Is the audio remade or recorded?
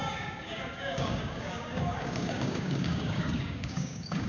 remade